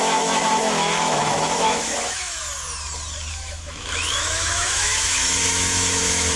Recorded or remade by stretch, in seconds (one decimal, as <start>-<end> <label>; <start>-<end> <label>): 0.0-2.4 remade; 2.4-3.3 recorded; 3.3-6.4 remade